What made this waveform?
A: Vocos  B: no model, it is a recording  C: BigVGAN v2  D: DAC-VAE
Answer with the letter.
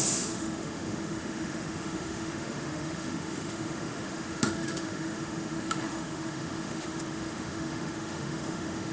D